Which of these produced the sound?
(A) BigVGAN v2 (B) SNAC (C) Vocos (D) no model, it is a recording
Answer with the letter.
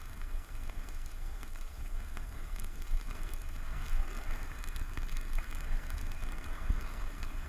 B